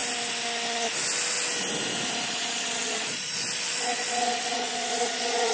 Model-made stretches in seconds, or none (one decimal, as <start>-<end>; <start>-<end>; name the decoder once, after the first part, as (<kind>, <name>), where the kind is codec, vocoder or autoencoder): 2.3-5.5 (vocoder, Vocos)